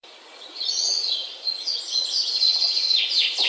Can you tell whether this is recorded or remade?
remade